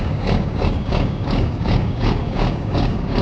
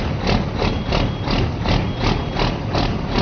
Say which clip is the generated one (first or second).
first